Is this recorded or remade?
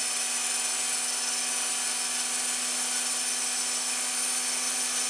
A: recorded